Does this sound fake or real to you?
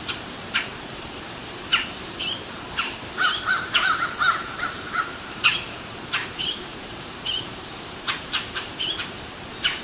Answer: fake